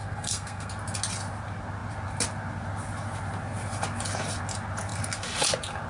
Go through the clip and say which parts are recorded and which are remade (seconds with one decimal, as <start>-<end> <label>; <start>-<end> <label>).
0.0-0.7 remade; 0.7-5.9 recorded